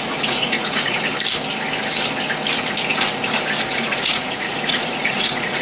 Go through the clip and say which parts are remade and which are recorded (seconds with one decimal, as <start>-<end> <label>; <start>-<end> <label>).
0.0-1.1 remade; 1.1-3.7 recorded; 3.7-5.6 remade